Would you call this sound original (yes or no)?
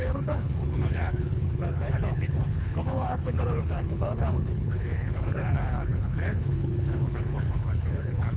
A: no